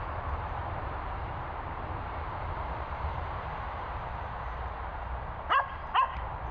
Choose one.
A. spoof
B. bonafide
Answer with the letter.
A